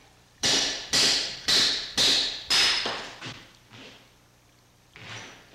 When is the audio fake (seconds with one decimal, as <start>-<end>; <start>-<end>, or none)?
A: 0.0-1.5